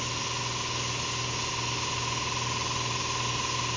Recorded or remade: recorded